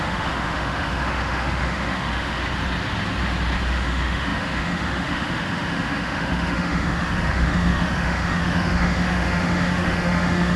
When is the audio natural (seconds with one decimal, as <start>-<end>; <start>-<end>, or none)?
2.4-3.7